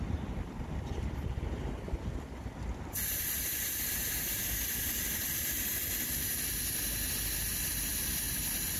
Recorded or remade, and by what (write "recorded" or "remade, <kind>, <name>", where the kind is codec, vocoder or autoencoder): recorded